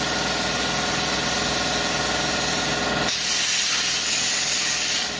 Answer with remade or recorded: recorded